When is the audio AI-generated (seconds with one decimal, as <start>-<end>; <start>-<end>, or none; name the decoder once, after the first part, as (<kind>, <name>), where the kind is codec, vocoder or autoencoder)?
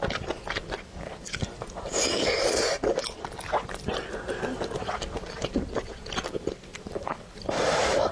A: 6.7-8.1 (vocoder, BigVGAN v2)